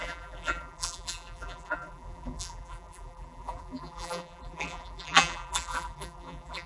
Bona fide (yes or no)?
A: no